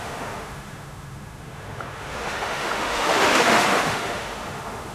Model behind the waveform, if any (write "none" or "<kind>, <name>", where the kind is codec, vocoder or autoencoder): autoencoder, DAC-VAE